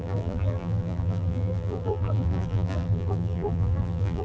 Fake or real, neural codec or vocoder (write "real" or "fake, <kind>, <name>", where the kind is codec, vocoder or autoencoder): fake, vocoder, BigVGAN v2